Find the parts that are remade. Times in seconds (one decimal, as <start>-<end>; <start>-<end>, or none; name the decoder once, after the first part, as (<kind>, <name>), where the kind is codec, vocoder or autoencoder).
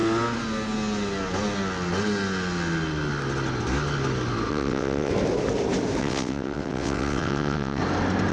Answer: 4.5-5.1 (vocoder, WaveNeXt); 6.0-7.8